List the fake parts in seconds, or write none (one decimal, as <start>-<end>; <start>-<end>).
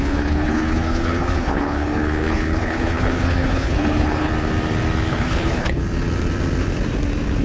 0.0-4.3; 5.1-5.8